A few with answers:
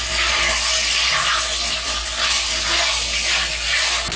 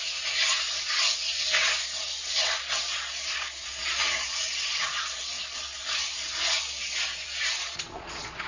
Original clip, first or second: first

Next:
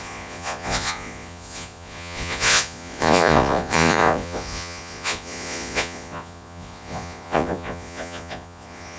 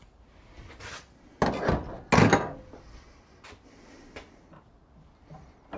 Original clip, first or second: second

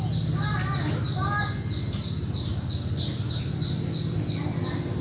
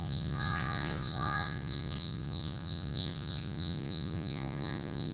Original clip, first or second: first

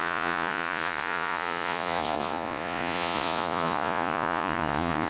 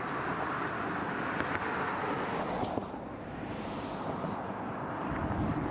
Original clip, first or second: second